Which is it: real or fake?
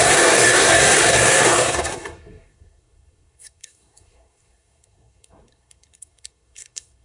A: fake